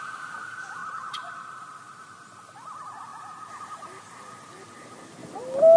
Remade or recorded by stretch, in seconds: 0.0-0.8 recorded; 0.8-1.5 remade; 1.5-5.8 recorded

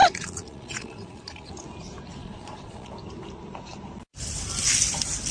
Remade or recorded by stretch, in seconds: 0.0-1.5 remade; 1.5-2.2 recorded; 2.2-2.9 remade; 2.9-5.3 recorded